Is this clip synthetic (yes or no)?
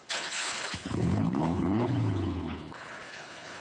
yes